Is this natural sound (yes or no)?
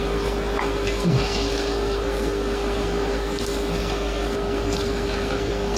no